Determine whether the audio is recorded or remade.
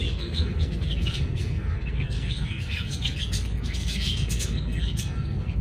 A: remade